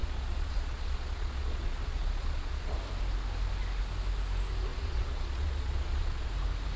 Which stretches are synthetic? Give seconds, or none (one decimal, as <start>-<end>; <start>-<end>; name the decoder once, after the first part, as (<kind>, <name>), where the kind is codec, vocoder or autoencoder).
0.0-2.8 (vocoder, Vocos); 4.7-6.3